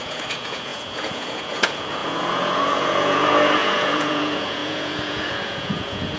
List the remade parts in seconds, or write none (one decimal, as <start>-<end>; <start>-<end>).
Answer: 0.0-6.2